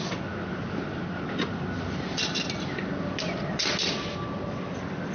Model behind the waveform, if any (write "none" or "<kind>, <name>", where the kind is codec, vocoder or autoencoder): none